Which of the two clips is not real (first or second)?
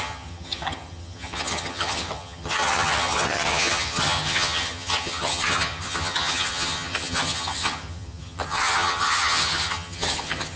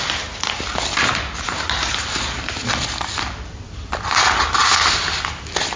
first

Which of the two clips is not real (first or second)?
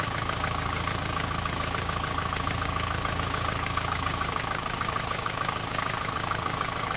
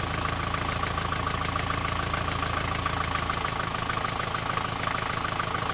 first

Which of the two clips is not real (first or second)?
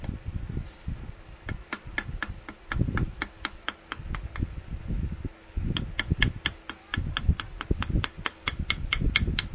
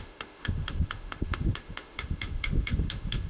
second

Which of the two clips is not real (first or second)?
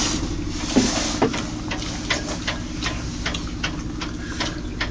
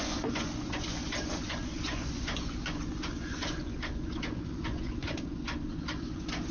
second